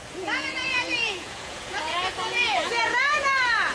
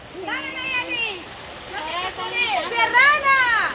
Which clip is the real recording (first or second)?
second